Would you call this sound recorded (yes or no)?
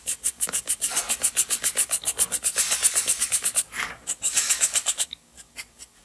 no